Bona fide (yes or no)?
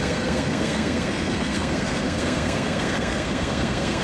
no